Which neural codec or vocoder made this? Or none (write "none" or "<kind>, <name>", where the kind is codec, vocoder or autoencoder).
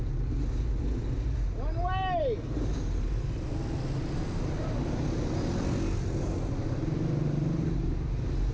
none